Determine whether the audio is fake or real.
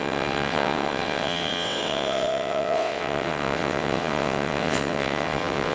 fake